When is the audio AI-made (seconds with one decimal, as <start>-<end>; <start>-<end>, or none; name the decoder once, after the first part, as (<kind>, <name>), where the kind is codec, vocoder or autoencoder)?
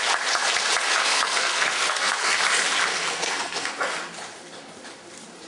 1.0-2.4 (codec, SNAC); 2.9-3.7